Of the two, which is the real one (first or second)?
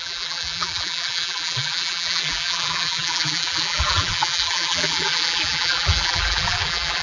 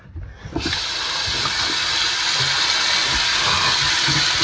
second